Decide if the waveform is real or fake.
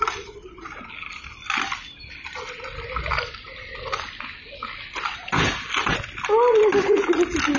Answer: real